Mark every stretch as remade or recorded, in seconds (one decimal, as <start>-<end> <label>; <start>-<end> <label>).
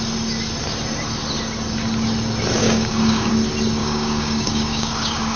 0.0-2.6 recorded; 2.6-3.3 remade; 3.3-3.8 recorded; 3.8-5.4 remade